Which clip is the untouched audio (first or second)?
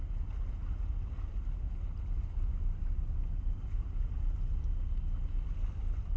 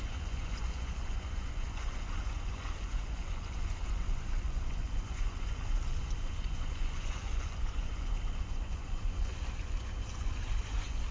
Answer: first